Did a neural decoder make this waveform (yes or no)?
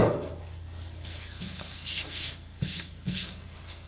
yes